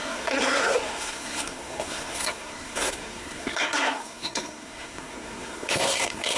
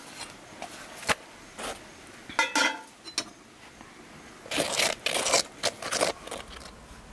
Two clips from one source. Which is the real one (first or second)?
second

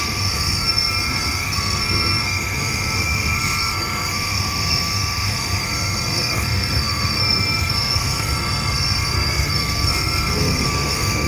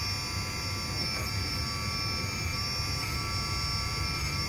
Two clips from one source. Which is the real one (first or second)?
second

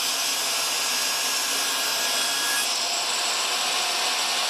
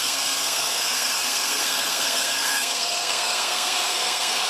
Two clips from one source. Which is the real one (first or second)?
first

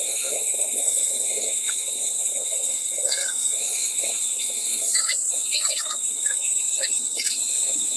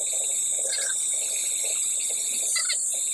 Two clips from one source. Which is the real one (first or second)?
second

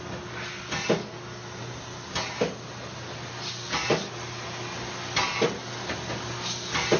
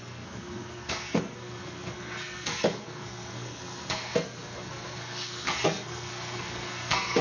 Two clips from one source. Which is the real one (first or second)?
first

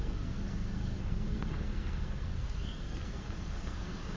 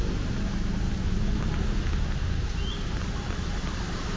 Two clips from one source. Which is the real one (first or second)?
second